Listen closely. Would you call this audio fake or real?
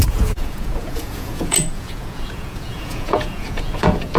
fake